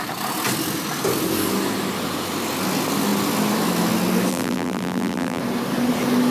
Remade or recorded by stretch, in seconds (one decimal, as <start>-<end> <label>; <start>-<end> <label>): 0.0-4.3 recorded; 4.3-5.4 remade; 5.4-6.3 recorded